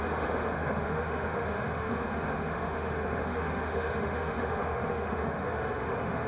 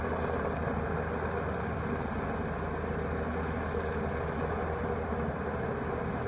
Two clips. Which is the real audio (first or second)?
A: second